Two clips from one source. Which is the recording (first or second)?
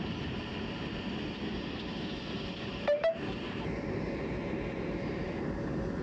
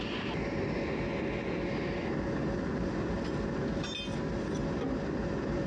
second